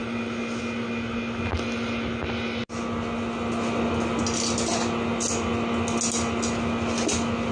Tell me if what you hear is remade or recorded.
recorded